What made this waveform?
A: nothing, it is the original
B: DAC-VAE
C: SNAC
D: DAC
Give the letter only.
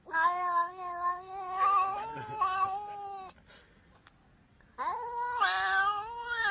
A